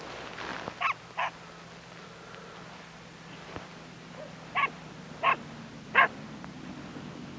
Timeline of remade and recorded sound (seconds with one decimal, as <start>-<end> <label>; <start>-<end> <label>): 0.0-7.4 recorded